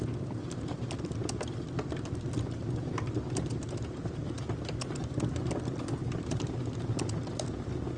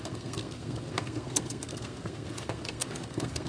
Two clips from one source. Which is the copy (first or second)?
second